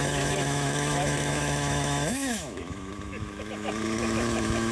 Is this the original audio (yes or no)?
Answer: no